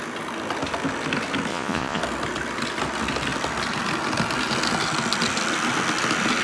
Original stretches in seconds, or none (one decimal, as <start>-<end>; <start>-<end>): 0.0-1.5; 2.0-6.4

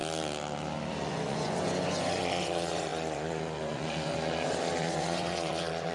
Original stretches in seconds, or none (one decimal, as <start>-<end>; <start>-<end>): 0.0-0.9

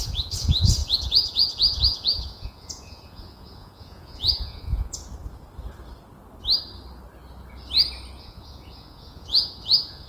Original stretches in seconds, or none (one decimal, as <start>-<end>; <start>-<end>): 5.0-8.2

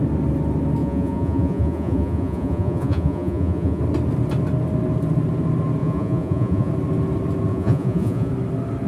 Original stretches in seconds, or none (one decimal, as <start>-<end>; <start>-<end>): 0.0-0.8; 3.8-5.8; 6.7-7.5; 8.3-8.9